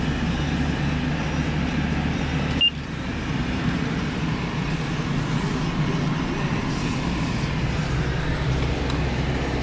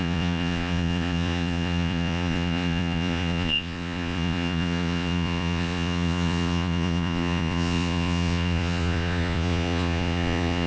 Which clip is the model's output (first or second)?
second